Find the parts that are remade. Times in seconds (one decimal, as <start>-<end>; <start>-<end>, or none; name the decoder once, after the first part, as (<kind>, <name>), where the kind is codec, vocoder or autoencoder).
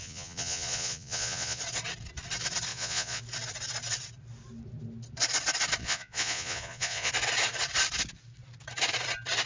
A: 0.0-1.6 (vocoder, Vocos); 2.7-3.2; 5.8-7.1